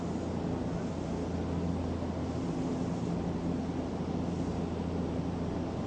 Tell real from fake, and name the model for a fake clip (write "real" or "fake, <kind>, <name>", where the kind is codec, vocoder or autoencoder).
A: real